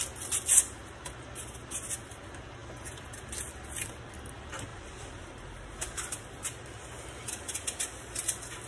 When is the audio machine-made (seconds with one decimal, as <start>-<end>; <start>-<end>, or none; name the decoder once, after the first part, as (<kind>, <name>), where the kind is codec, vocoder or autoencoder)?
4.7-6.8 (vocoder, BigVGAN v2)